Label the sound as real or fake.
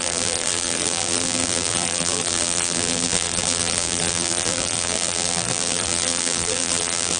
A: fake